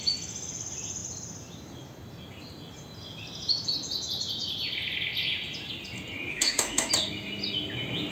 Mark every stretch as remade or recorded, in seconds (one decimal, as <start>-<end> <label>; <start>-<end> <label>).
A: 0.0-6.3 recorded; 6.3-6.9 remade; 6.9-8.1 recorded